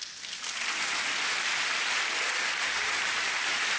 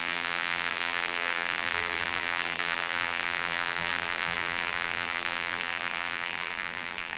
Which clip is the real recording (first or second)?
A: first